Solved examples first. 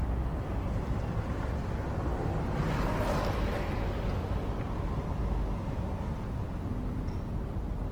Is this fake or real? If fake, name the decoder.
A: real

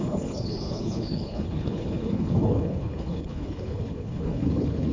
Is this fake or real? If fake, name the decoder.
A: fake, codec, HILCodec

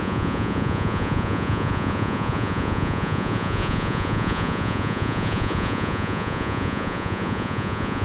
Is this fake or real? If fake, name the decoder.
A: fake, vocoder, Vocos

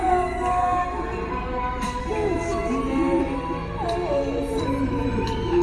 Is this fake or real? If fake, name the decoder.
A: fake, vocoder, BigVGAN v2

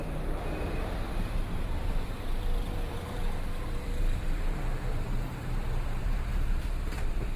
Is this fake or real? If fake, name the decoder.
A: fake, vocoder, BigVGAN v2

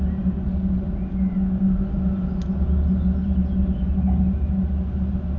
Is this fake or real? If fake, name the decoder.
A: real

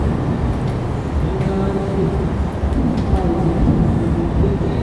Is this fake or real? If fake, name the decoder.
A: real